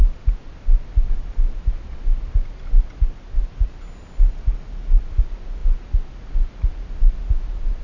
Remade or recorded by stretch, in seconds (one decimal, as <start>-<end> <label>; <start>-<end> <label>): 0.0-7.8 recorded